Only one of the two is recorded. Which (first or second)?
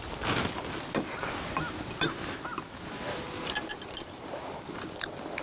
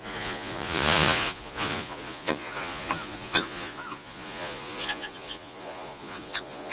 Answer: first